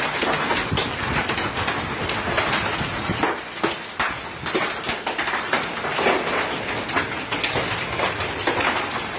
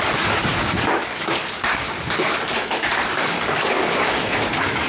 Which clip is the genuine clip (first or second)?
first